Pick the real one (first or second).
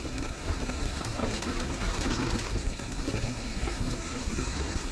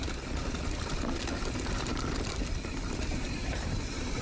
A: second